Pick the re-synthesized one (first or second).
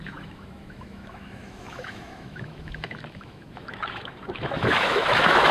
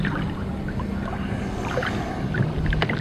first